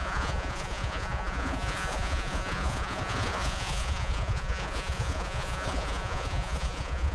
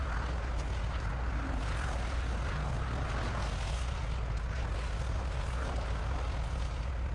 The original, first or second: second